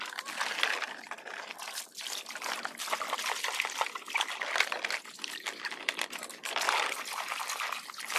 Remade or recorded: recorded